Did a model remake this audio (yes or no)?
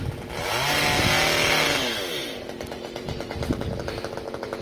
no